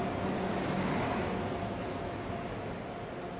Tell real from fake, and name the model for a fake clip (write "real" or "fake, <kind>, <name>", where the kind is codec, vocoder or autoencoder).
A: real